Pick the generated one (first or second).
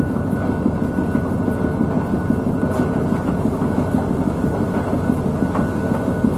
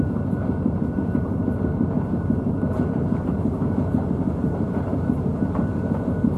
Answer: second